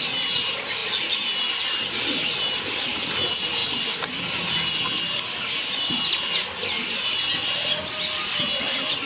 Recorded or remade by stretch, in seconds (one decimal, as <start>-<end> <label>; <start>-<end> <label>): 0.0-9.1 recorded